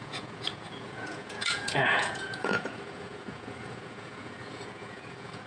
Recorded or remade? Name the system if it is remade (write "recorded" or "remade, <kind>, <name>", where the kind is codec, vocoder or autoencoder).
remade, vocoder, Vocos